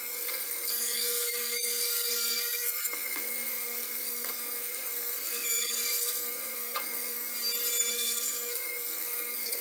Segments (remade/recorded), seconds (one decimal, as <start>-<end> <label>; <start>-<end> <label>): 0.0-7.3 remade; 7.3-7.9 recorded; 7.9-9.6 remade